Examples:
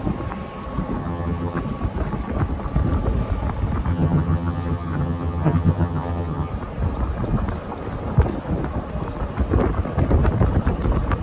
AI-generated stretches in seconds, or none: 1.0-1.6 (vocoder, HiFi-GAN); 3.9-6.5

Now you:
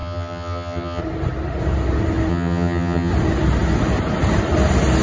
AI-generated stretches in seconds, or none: 0.0-1.0 (vocoder, HiFi-GAN); 2.3-3.1

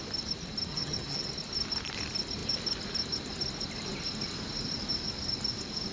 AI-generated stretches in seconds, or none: 0.7-1.3 (vocoder, HiFi-GAN)

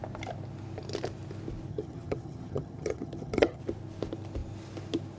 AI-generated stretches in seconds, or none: 1.7-3.6 (vocoder, HiFi-GAN)

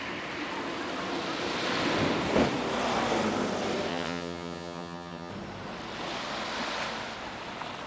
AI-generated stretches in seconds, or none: 3.9-5.3 (vocoder, HiFi-GAN)